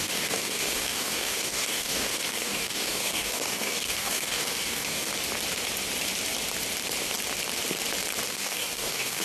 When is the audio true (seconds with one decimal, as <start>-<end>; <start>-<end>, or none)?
5.1-8.3